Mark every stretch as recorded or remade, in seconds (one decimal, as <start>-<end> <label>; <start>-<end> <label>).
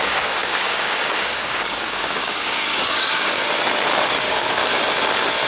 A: 0.0-3.4 remade; 3.4-4.0 recorded; 4.0-4.6 remade; 4.6-5.5 recorded